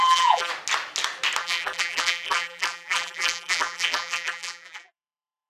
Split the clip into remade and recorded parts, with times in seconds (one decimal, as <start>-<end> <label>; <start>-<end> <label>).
0.0-0.5 remade; 0.5-1.4 recorded; 1.4-5.5 remade